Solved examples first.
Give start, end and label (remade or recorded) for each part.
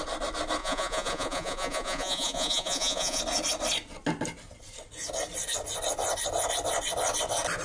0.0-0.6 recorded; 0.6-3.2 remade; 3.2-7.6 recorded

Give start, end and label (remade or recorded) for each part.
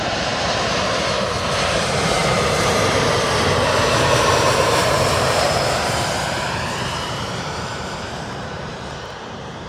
0.0-9.7 remade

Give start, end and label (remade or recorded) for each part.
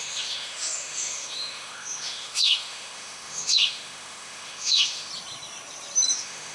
0.0-5.1 remade; 5.1-6.1 recorded; 6.1-6.5 remade